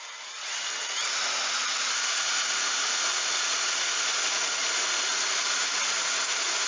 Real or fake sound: fake